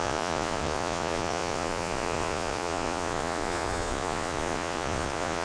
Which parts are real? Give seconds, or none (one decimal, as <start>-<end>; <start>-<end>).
none